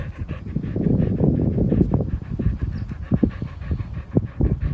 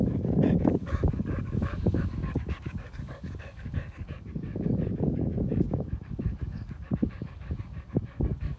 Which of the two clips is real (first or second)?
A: first